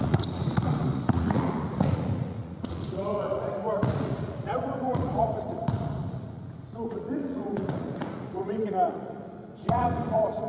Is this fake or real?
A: fake